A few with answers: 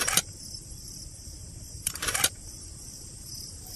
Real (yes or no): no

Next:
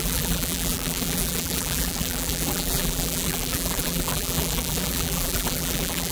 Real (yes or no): no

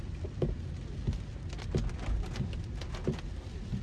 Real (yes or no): yes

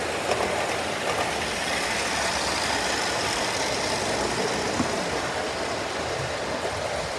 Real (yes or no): yes